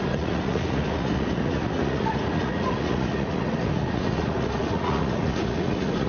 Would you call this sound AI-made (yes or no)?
yes